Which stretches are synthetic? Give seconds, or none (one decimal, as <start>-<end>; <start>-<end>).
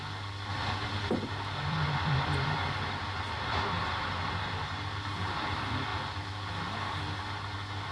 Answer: 0.0-5.9; 7.2-7.9